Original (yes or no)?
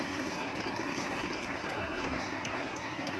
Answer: no